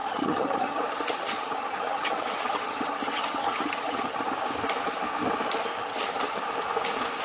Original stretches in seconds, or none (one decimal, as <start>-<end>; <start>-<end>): 4.3-5.8; 6.4-7.2